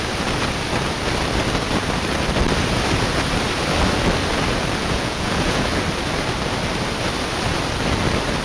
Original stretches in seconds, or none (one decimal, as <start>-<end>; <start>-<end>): 0.0-4.8; 5.7-8.4